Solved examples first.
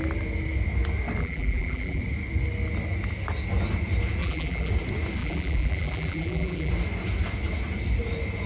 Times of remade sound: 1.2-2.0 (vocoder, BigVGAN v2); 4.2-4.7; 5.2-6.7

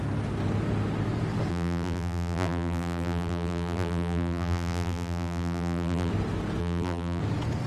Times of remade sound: 1.5-6.1 (vocoder, BigVGAN v2); 6.6-7.2

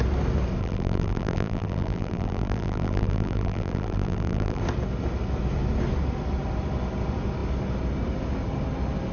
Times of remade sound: 0.6-4.6 (vocoder, BigVGAN v2)

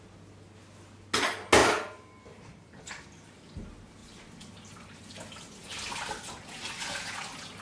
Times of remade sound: 1.6-2.9 (vocoder, BigVGAN v2); 4.0-5.1

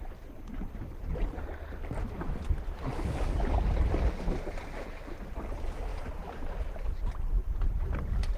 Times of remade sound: none

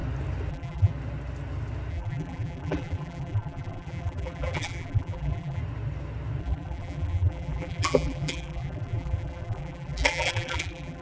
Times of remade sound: 0.5-0.9 (vocoder, BigVGAN v2); 1.9-5.6; 6.4-11.0

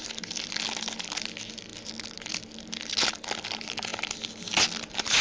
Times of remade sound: none

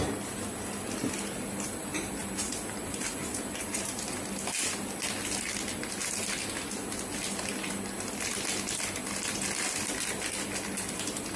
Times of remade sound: 1.9-4.3 (vocoder, BigVGAN v2)